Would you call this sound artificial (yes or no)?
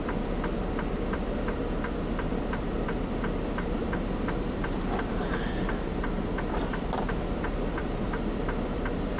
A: yes